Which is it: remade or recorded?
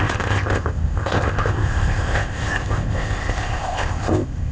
remade